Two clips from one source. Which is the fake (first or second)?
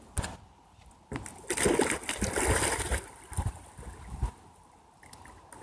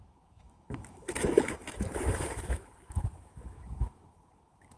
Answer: second